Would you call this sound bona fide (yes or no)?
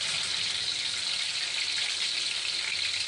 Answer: yes